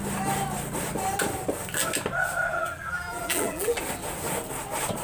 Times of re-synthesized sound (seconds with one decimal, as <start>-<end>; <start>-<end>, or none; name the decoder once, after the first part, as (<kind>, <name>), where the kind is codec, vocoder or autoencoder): 2.5-3.8 (vocoder, BigVGAN v2)